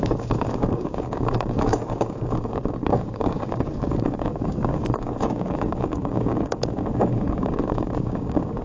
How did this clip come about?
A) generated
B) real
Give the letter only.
A